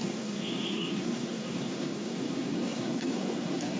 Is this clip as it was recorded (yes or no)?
no